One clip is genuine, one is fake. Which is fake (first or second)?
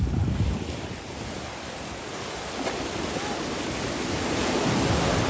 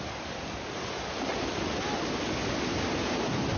first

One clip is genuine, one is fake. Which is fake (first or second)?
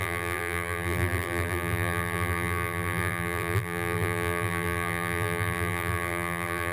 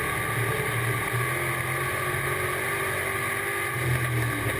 first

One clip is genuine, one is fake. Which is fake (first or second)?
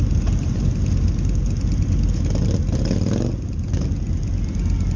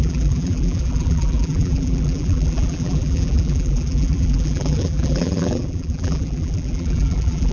second